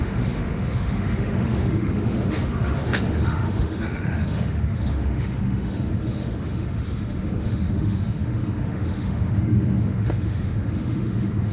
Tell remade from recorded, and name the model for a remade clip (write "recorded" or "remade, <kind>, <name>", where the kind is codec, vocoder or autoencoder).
remade, autoencoder, DAC-VAE